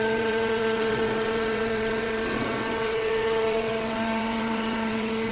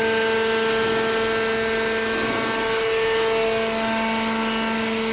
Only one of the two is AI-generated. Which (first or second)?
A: first